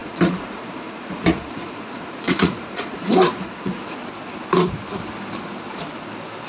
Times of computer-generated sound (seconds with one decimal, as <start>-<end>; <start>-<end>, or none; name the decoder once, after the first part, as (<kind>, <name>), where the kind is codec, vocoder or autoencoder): 0.0-4.0 (vocoder, Vocos)